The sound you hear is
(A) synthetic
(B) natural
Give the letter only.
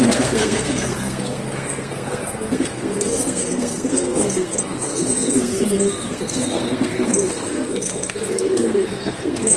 A